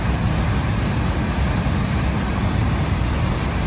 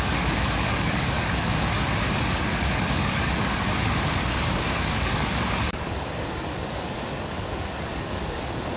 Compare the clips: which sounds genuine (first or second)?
first